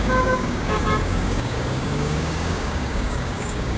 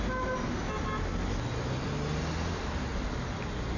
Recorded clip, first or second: second